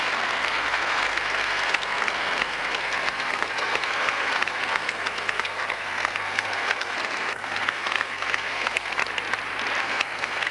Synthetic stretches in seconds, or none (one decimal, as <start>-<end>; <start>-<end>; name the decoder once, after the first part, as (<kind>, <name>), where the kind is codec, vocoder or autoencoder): 0.0-9.0 (codec, SNAC); 9.8-10.5